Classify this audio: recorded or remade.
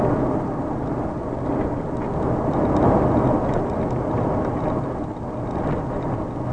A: recorded